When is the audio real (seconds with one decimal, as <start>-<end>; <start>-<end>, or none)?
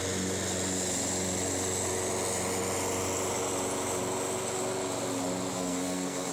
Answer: 0.0-5.5